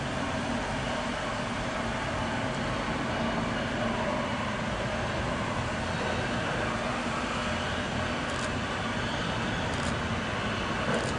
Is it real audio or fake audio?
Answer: real